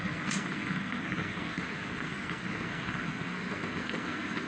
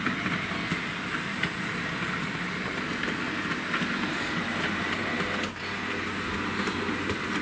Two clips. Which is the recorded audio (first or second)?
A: second